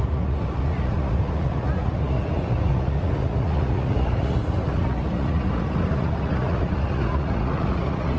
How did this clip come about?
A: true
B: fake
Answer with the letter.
B